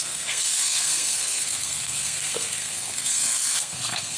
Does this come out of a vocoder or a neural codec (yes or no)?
yes